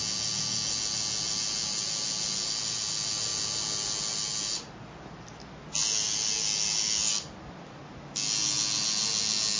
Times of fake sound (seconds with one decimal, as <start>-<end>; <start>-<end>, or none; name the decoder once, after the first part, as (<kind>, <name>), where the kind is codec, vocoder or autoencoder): none